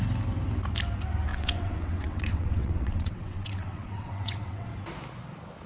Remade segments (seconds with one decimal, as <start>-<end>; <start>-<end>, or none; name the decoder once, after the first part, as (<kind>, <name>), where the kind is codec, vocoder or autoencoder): 1.3-4.7 (vocoder, WaveNeXt)